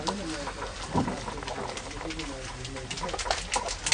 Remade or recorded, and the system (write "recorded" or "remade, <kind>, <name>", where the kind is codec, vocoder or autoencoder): recorded